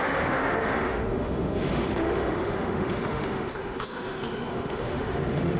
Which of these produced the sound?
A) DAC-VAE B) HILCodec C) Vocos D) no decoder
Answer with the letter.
A